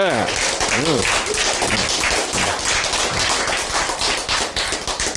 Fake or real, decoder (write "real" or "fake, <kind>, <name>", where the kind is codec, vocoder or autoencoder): real